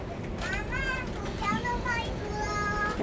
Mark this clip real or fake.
real